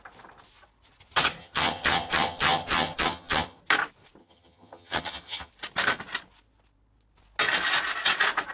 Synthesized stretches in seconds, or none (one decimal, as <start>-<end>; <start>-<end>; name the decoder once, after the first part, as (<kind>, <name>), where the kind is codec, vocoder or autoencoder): 1.4-3.6 (vocoder, HiFi-GAN); 4.2-5.5